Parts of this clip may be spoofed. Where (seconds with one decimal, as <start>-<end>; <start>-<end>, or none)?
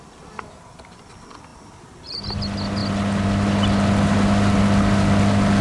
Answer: 1.5-2.2